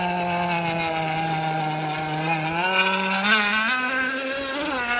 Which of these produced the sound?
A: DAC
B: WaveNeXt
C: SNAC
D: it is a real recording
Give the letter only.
D